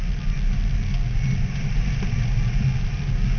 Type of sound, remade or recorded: recorded